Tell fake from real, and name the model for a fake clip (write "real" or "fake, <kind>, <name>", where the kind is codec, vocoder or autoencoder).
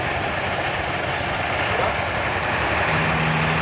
real